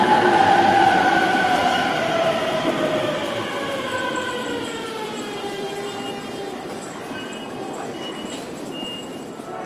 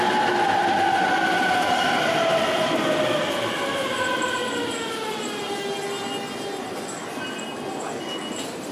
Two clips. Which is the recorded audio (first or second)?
second